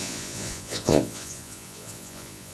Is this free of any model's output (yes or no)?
no